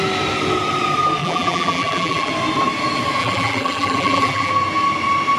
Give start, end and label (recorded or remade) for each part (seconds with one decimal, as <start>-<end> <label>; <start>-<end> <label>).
0.0-1.2 recorded; 1.2-2.3 remade; 2.3-3.2 recorded; 3.2-4.5 remade; 4.5-5.4 recorded